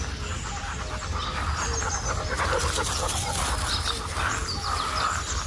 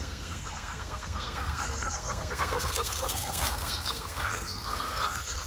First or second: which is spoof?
second